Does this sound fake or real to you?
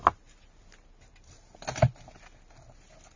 real